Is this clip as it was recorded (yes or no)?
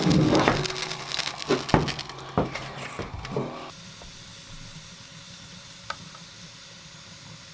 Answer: yes